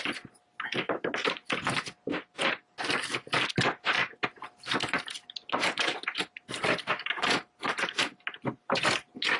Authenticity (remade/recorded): recorded